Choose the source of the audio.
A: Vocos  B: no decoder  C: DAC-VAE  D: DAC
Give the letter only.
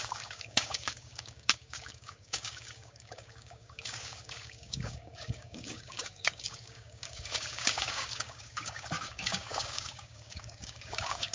D